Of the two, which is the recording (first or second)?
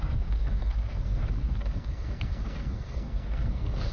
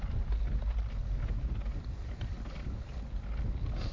second